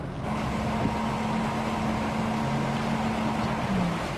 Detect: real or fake real